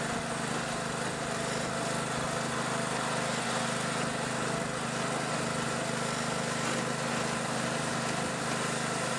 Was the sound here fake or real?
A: real